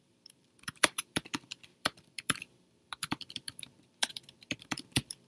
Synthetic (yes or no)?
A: yes